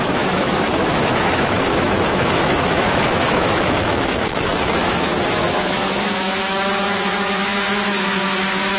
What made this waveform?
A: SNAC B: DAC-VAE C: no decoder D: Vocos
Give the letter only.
B